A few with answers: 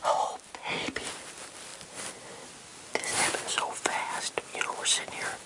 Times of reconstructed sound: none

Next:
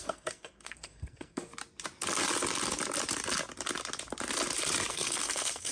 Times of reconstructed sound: 0.0-1.5 (codec, SNAC); 4.9-5.7

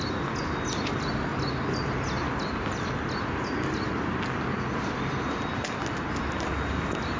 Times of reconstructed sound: none

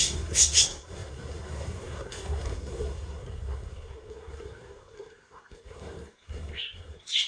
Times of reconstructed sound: 0.0-7.3 (codec, SNAC)

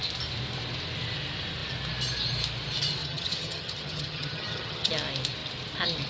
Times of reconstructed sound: 3.0-4.9 (vocoder, HiFi-GAN)

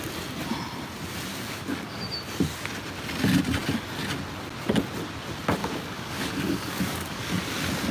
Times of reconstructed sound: 1.3-2.0 (codec, DAC); 5.6-7.4

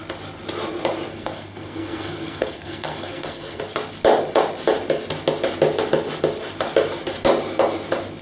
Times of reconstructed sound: 1.1-3.6 (codec, SNAC)